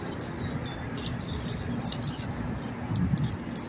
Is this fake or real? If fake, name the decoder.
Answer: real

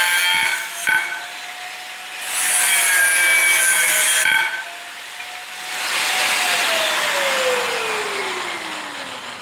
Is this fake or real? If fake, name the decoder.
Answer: real